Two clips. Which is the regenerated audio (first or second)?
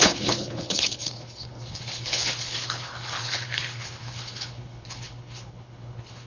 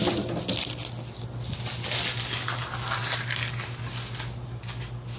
first